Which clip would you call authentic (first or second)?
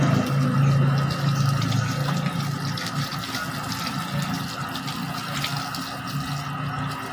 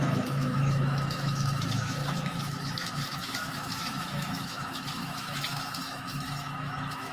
first